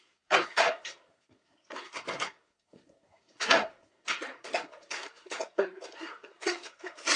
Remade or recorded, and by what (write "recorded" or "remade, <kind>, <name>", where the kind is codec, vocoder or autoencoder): remade, codec, SNAC